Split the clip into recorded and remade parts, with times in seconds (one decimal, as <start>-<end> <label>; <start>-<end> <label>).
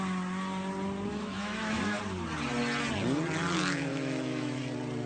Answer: 0.0-1.1 recorded; 1.1-2.0 remade; 2.0-3.9 recorded; 3.9-4.6 remade; 4.6-5.1 recorded